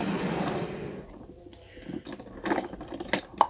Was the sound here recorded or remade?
recorded